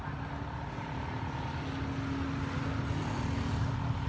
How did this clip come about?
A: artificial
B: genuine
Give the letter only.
B